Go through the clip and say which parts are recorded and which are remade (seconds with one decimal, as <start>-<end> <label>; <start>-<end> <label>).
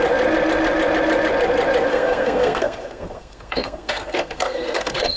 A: 0.0-1.9 recorded; 1.9-5.2 remade